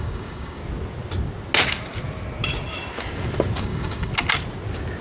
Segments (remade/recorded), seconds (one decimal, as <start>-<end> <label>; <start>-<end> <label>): 0.0-0.6 remade; 0.6-3.6 recorded; 3.6-4.1 remade; 4.1-5.0 recorded